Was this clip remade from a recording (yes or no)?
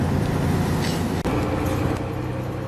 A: no